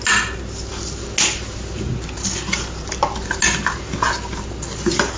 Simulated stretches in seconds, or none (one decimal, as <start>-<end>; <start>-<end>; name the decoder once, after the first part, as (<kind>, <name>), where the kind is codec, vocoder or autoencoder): none